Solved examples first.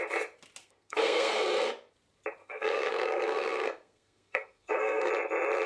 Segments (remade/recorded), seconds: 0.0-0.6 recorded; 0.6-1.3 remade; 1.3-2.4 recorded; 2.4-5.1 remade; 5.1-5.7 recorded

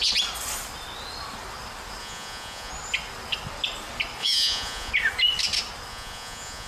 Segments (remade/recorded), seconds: 0.0-2.0 recorded; 2.0-2.7 remade; 2.7-4.2 recorded; 4.2-4.9 remade; 4.9-5.9 recorded; 5.9-6.7 remade

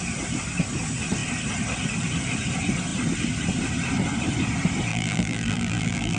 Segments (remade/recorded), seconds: 0.0-4.9 recorded; 4.9-6.2 remade

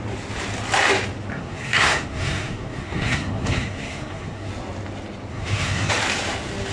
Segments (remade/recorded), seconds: 0.0-1.3 recorded; 1.3-4.5 remade; 4.5-5.3 recorded; 5.3-5.9 remade; 5.9-6.7 recorded

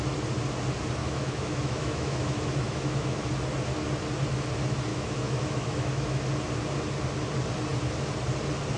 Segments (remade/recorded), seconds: 0.0-1.0 recorded; 1.0-3.3 remade; 3.3-4.9 recorded; 4.9-6.2 remade; 6.2-8.8 recorded

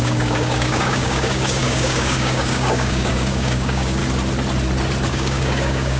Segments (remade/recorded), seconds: 0.0-4.0 remade; 4.0-5.1 recorded; 5.1-6.0 remade

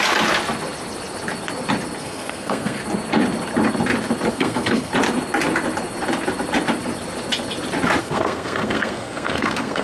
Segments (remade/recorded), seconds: 0.0-2.0 recorded; 2.0-2.8 remade; 2.8-4.3 recorded; 4.3-4.9 remade; 4.9-8.0 recorded; 8.0-9.8 remade